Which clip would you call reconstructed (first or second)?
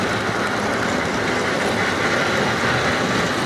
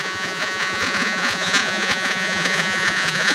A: second